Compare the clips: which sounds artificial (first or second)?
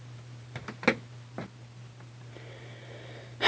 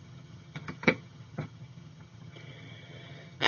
second